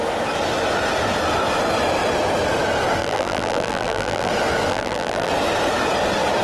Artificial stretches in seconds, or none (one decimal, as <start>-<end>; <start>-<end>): 3.0-4.3; 4.7-5.3